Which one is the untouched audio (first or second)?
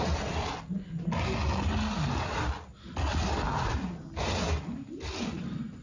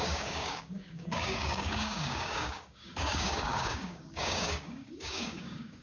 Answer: first